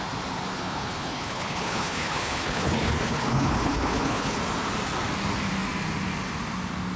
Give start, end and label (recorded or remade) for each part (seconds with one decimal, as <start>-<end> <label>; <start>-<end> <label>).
0.0-0.5 recorded; 0.5-4.4 remade; 4.4-7.0 recorded